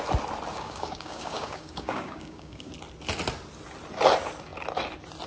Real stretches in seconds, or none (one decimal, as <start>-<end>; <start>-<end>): 0.0-0.5; 2.7-5.3